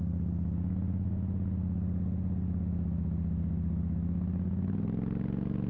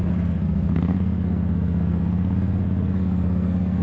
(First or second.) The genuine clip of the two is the first